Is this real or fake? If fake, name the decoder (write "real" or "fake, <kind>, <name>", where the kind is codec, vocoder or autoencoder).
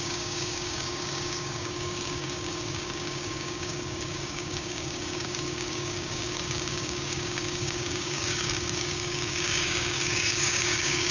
fake, codec, DAC